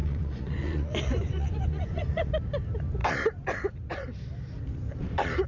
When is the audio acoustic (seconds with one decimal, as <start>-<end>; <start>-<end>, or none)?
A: 2.3-5.5